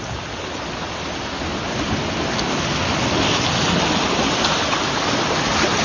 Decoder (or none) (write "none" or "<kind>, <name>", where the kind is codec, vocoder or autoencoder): none